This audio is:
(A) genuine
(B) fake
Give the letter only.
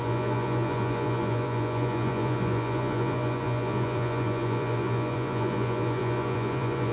B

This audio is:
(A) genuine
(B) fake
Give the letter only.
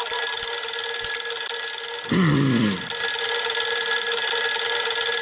A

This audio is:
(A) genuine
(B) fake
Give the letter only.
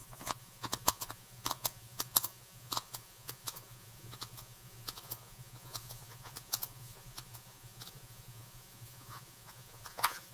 B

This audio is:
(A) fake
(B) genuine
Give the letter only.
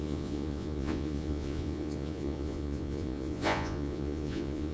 A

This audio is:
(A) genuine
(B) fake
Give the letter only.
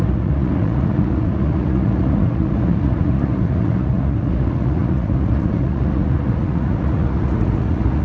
B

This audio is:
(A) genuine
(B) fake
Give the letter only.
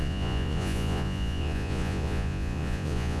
B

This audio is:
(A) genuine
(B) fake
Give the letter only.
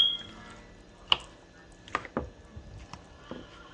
A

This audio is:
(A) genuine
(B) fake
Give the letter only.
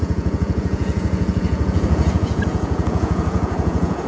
B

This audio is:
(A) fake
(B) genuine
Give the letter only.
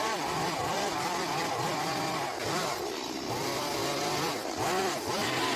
B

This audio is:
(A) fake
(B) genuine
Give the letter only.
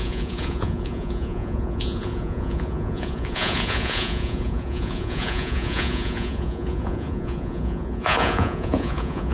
A